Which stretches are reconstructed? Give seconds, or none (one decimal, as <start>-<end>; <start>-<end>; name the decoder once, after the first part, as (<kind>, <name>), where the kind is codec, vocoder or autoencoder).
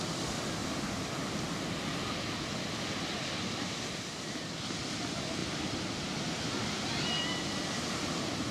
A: none